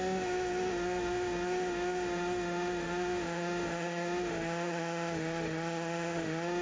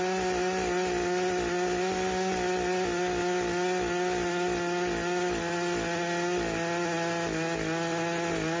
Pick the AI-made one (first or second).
first